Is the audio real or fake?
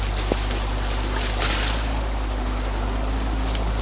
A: real